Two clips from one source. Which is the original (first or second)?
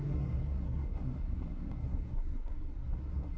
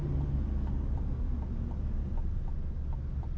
second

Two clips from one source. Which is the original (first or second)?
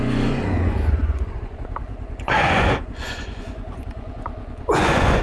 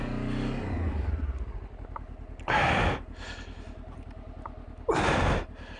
second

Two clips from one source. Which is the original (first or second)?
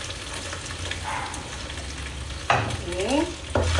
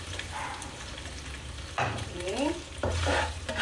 first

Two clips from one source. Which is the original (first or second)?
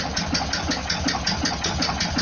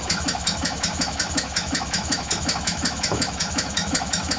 first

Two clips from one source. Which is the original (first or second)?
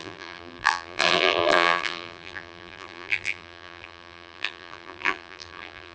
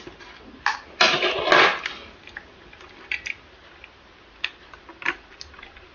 second